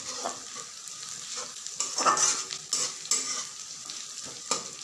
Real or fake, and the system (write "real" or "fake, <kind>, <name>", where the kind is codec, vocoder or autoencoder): real